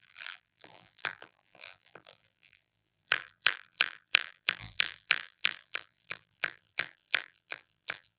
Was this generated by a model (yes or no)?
yes